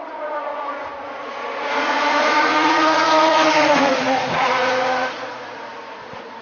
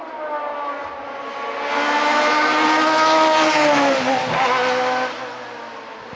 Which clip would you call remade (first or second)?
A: first